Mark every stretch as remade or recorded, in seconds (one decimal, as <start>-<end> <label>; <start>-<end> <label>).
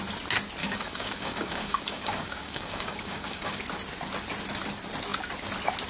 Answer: 0.0-0.6 recorded; 0.6-3.6 remade; 3.6-5.9 recorded